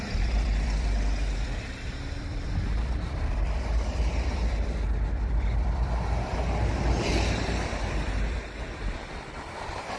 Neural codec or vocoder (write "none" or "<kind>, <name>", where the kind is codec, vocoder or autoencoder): vocoder, BigVGAN v2